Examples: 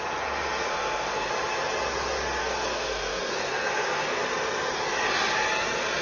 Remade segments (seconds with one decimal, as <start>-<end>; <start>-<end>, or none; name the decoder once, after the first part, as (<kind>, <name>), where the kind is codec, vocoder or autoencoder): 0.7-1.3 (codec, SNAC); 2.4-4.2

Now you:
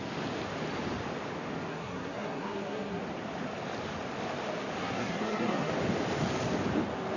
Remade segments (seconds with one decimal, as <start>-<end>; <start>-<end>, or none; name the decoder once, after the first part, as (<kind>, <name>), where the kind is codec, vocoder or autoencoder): 1.7-3.0 (codec, SNAC); 4.8-5.7

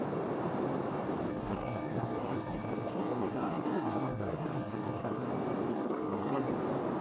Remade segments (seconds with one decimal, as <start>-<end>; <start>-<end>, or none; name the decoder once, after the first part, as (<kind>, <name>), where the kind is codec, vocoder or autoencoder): 1.3-5.3 (codec, SNAC); 5.7-6.5

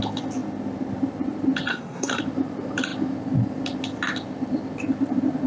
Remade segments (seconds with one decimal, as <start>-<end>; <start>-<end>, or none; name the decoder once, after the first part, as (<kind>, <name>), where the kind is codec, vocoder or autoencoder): 1.7-2.2 (codec, SNAC)

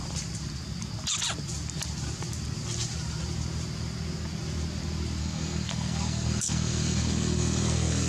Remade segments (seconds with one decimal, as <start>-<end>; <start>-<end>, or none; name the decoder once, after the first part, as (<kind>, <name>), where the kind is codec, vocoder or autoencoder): 5.2-8.1 (codec, SNAC)

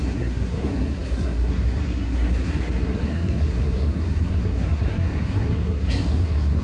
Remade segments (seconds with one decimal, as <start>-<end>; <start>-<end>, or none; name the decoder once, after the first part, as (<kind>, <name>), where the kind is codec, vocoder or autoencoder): 0.0-6.6 (codec, SNAC)